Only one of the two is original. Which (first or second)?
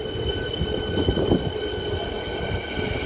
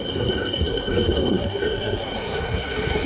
first